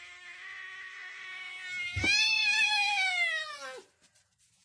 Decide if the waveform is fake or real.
real